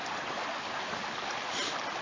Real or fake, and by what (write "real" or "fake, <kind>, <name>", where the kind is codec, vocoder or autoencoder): real